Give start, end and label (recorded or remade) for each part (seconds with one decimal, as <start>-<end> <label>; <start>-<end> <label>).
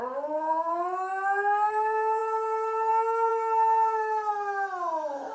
0.0-5.3 remade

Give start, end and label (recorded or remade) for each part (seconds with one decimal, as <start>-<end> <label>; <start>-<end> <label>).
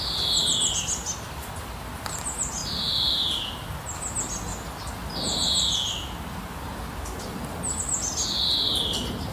0.0-9.3 recorded